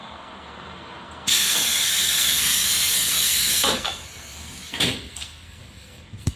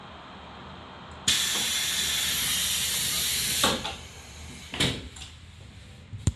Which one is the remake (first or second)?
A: first